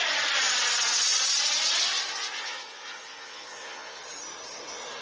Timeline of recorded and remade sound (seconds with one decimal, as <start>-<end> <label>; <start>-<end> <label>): 0.0-2.2 recorded; 2.2-4.0 remade; 4.0-5.0 recorded